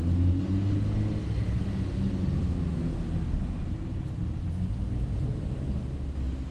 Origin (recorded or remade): recorded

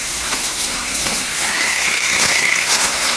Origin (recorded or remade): remade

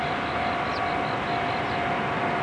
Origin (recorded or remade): recorded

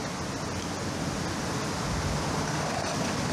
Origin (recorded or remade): recorded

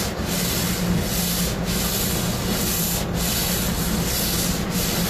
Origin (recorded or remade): recorded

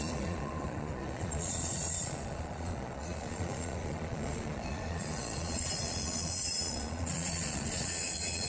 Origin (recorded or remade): remade